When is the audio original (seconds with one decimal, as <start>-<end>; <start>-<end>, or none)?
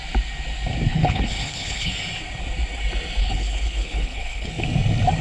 0.0-0.9; 1.9-3.2; 4.5-5.2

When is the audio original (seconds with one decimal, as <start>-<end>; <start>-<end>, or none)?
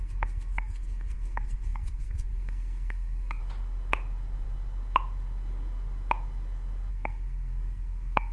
3.4-6.9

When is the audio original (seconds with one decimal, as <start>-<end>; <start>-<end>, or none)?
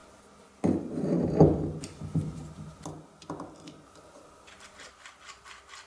0.0-5.9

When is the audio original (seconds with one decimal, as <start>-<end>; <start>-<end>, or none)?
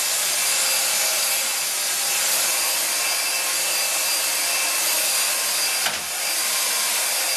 0.0-7.4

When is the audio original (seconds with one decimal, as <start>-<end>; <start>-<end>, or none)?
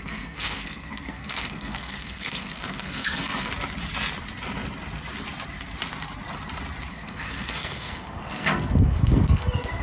3.5-6.9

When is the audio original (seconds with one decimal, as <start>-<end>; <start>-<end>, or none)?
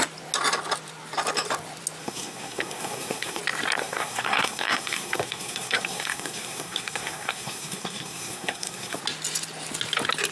0.0-2.0; 3.4-3.8; 9.0-10.3